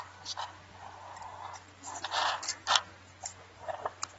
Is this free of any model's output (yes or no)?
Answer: yes